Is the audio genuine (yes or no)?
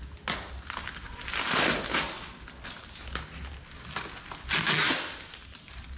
yes